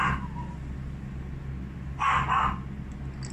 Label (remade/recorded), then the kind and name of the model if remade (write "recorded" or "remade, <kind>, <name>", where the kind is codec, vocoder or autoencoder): recorded